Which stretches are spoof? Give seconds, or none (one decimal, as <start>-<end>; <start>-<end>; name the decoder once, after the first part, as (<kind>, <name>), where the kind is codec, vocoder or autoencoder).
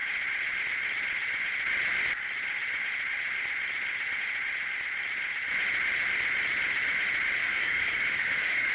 7.4-8.7 (codec, DAC)